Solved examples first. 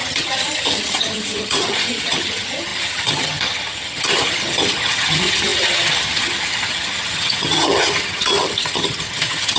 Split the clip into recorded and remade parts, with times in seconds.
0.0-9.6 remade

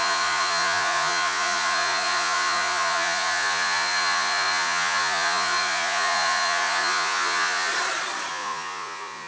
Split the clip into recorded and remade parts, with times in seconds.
0.0-7.7 remade; 7.7-8.3 recorded; 8.3-9.3 remade